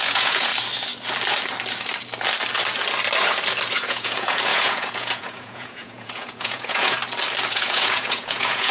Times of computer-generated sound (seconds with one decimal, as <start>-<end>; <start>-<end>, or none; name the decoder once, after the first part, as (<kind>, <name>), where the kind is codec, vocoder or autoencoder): 0.0-0.5 (vocoder, Vocos); 3.7-7.0; 7.5-8.7